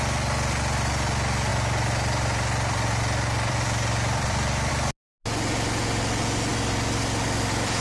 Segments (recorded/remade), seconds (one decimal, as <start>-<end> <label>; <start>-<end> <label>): 0.0-1.5 recorded; 1.5-4.7 remade; 4.7-6.5 recorded; 6.5-7.8 remade